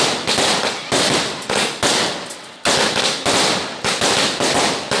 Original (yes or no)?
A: yes